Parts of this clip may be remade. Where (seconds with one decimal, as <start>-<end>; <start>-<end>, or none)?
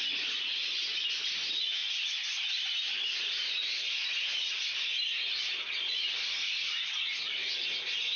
none